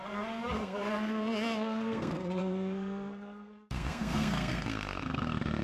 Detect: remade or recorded remade